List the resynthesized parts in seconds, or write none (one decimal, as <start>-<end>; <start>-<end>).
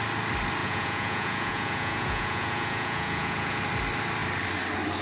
0.6-3.6